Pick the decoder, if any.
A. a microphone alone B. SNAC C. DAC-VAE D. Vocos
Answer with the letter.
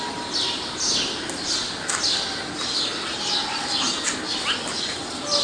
A